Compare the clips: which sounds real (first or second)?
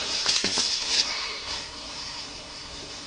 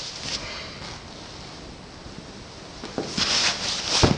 second